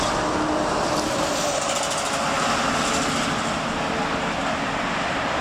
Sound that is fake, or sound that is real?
real